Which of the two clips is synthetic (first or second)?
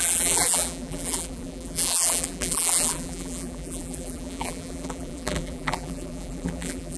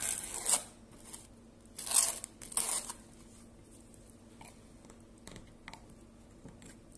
first